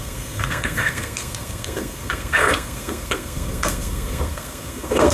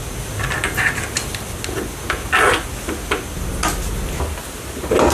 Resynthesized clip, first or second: first